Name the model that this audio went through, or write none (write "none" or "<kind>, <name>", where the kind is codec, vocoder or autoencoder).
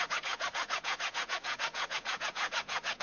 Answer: vocoder, Vocos